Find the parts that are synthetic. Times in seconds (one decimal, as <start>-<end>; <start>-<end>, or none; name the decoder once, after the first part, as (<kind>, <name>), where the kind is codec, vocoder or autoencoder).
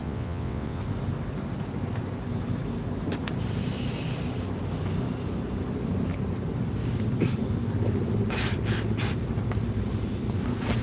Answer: 0.0-0.8 (vocoder, WaveNeXt)